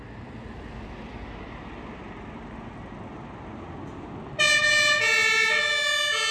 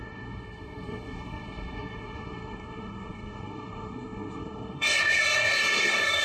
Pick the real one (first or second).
first